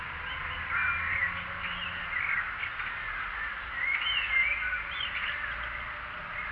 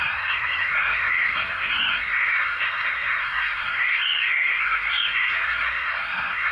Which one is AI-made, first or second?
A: second